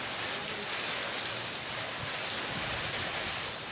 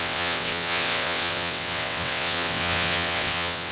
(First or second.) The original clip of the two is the first